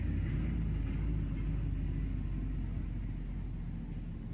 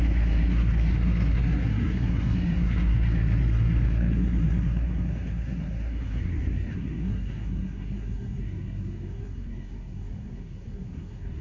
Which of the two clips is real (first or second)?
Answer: first